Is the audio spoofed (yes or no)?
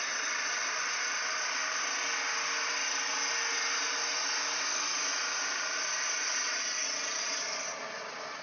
no